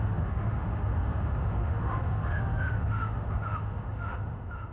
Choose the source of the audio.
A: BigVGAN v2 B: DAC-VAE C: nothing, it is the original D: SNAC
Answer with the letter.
B